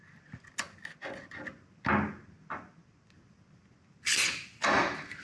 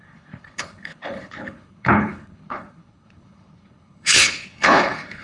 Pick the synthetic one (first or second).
second